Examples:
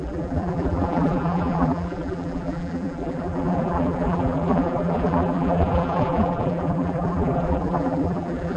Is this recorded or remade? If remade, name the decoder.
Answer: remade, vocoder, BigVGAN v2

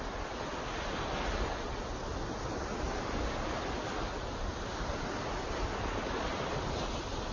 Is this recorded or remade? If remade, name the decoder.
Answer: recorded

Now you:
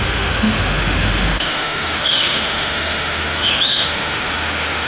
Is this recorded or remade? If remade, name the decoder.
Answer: remade, autoencoder, DAC-VAE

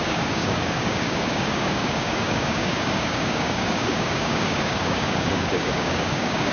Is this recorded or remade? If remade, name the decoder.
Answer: remade, codec, DAC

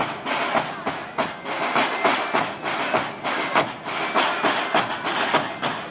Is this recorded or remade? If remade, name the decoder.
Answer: recorded